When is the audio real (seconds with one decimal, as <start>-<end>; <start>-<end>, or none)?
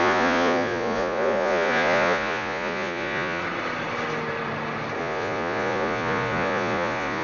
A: 3.4-5.0